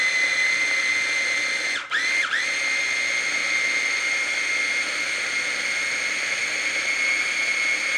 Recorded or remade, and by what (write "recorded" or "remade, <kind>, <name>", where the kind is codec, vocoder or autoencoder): recorded